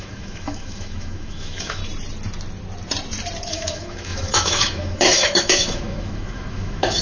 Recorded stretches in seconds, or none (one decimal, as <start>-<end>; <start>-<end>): 1.8-3.5